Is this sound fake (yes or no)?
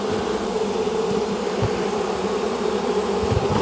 no